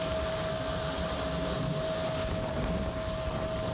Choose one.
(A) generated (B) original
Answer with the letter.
B